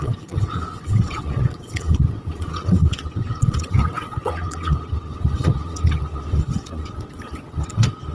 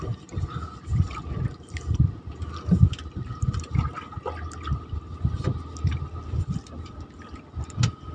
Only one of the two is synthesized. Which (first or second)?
first